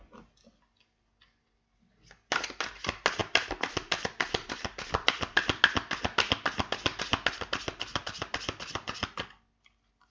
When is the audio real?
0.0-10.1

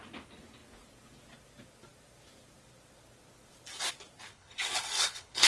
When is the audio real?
0.0-4.3

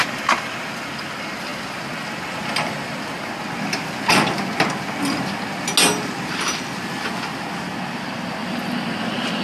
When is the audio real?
0.0-9.4

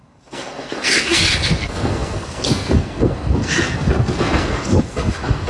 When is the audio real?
none

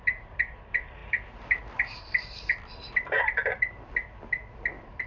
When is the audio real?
0.0-5.1

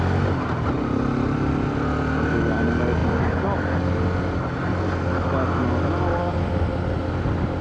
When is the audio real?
0.0-7.6

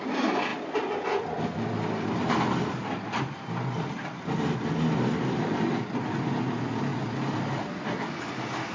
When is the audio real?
0.0-8.7